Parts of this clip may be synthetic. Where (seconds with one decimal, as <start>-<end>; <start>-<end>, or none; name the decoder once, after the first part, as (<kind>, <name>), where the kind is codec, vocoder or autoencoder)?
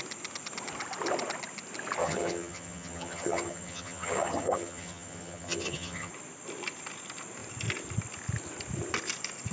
2.0-6.1 (vocoder, HiFi-GAN)